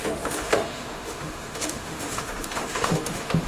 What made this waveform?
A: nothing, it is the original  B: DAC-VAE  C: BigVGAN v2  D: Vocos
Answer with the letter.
B